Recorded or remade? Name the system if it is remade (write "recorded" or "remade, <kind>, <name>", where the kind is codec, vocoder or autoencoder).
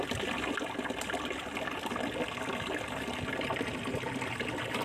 recorded